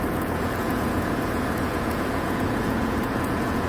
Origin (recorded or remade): remade